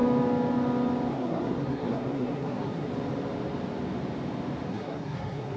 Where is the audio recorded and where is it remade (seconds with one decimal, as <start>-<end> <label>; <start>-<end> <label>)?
0.0-1.1 recorded; 1.1-2.9 remade; 2.9-4.7 recorded; 4.7-5.6 remade